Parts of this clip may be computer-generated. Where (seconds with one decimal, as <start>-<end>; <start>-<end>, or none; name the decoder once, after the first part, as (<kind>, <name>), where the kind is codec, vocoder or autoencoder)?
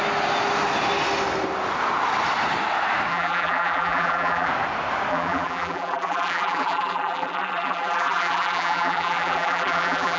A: 3.1-4.5 (vocoder, BigVGAN v2); 5.1-10.2